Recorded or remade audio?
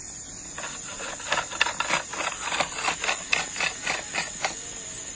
recorded